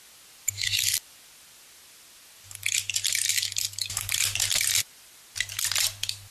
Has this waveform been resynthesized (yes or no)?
no